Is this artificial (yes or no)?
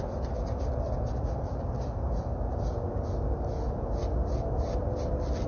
no